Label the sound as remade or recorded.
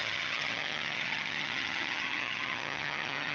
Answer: remade